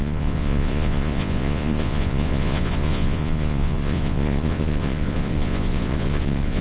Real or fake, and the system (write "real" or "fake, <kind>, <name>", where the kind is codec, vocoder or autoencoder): fake, vocoder, Vocos